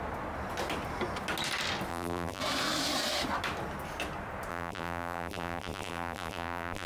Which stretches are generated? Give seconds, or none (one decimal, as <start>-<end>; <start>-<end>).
1.9-2.4; 4.5-6.9